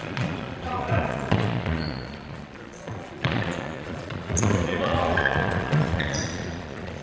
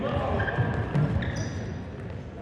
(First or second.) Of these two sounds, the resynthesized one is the first